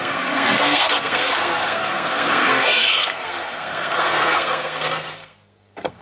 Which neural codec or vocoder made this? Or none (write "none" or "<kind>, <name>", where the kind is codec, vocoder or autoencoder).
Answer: codec, SNAC